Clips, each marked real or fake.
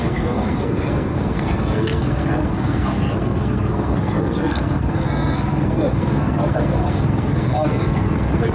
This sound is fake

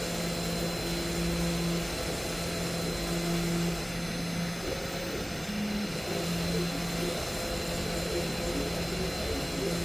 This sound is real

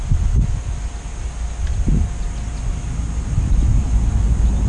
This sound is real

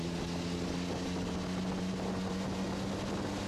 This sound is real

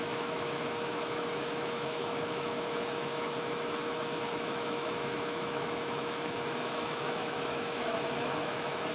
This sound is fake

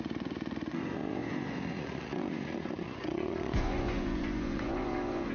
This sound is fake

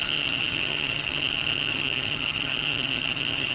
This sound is fake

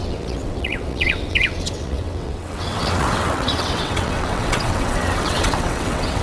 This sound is fake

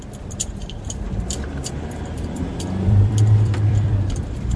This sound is fake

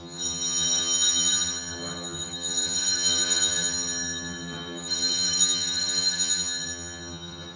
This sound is fake